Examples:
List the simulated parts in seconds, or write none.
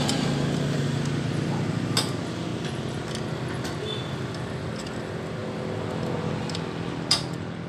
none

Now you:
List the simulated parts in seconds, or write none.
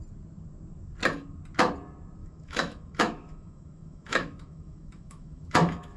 2.2-6.0 (autoencoder, DAC-VAE)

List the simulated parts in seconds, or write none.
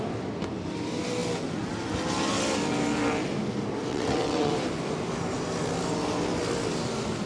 3.9-4.5 (vocoder, WaveNeXt)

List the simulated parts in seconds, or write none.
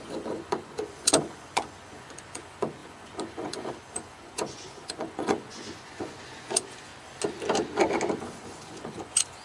0.0-6.9 (vocoder, Vocos); 8.2-9.4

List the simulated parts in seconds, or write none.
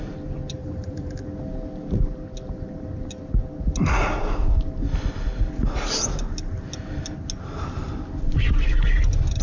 0.6-1.2 (vocoder, BigVGAN v2)